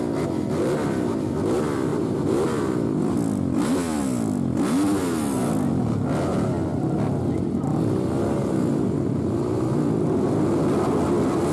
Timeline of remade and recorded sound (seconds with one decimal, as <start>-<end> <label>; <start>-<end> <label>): 0.0-1.9 recorded; 1.9-2.6 remade; 2.6-11.5 recorded